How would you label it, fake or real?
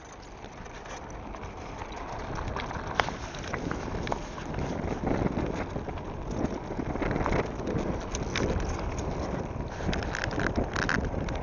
real